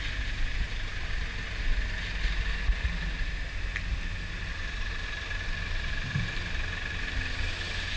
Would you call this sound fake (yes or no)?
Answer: no